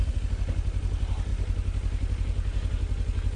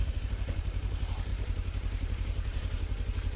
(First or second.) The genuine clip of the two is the first